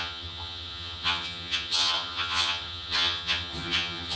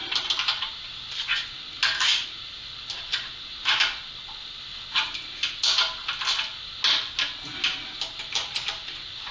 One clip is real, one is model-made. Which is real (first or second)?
second